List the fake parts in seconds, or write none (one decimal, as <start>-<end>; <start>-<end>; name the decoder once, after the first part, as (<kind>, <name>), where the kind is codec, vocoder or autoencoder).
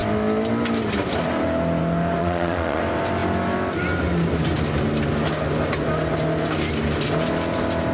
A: 2.2-2.8 (vocoder, Vocos)